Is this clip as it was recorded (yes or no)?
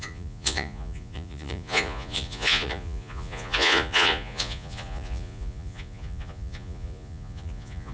no